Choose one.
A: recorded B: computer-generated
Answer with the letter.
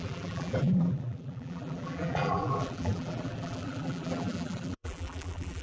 B